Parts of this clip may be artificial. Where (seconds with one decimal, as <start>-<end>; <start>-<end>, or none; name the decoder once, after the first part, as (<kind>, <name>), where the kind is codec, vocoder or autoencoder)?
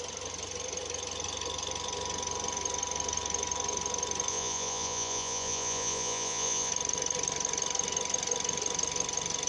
4.3-6.7 (vocoder, Vocos)